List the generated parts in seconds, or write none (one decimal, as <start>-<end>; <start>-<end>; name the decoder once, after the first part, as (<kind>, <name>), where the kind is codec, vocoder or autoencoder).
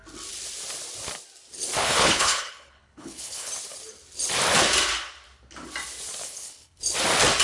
1.8-3.5 (codec, HILCodec); 6.2-6.8